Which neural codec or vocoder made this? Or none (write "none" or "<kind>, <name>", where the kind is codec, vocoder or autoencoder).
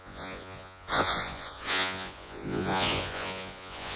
vocoder, Vocos